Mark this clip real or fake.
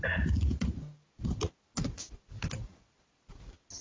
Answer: real